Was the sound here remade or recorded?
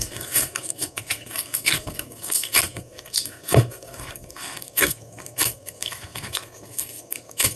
remade